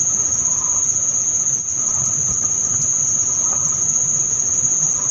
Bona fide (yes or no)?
no